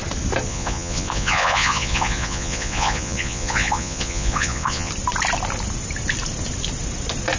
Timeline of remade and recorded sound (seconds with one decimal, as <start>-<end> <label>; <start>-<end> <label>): 0.0-0.5 recorded; 0.5-4.9 remade; 4.9-7.4 recorded